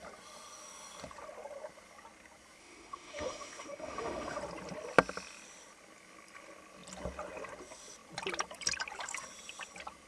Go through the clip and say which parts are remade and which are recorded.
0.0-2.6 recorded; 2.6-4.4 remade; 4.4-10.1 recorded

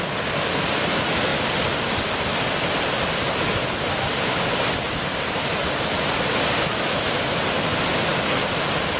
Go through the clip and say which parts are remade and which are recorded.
0.0-6.6 recorded; 6.6-7.1 remade; 7.1-9.0 recorded

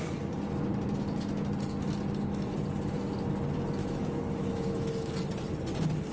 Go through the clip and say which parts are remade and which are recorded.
0.0-3.8 recorded; 3.8-5.1 remade; 5.1-6.1 recorded

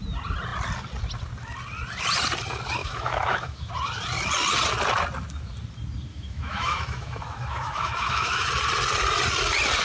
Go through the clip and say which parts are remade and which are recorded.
0.0-2.8 recorded; 2.8-3.7 remade; 3.7-6.1 recorded; 6.1-8.5 remade; 8.5-9.8 recorded

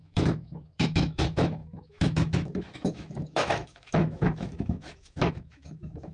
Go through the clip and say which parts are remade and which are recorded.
0.0-6.1 remade

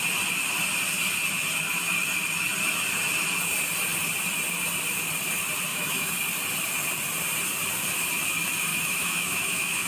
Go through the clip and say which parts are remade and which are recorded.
0.0-5.7 recorded; 5.7-6.2 remade; 6.2-8.7 recorded; 8.7-9.9 remade

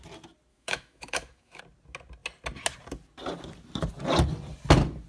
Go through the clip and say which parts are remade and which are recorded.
0.0-0.5 recorded; 0.5-1.6 remade; 1.6-5.1 recorded

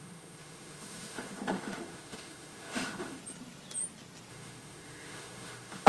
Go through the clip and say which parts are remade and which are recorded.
0.0-3.2 remade; 3.2-4.3 recorded; 4.3-5.9 remade